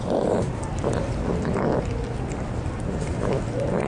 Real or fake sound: real